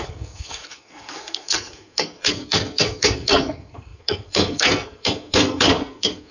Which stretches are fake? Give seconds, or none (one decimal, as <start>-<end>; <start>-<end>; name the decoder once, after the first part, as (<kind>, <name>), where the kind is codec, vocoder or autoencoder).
0.0-6.3 (codec, SNAC)